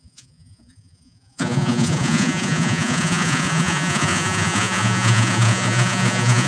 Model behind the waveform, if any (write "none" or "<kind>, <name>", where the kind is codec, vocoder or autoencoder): vocoder, Vocos